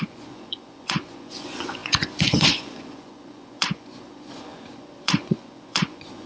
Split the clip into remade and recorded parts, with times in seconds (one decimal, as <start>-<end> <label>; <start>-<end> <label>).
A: 0.0-6.3 remade